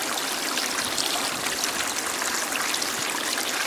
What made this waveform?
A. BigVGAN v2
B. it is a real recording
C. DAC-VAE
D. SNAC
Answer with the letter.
A